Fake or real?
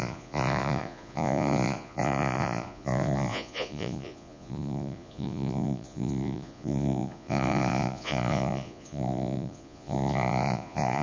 fake